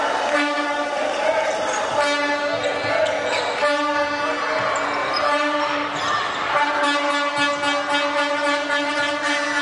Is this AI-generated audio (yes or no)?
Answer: no